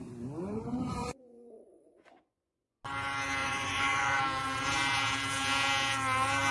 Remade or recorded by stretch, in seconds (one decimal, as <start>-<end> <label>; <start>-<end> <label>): 0.0-1.0 recorded; 1.0-2.8 remade; 2.8-3.4 recorded; 3.4-4.2 remade; 4.2-6.5 recorded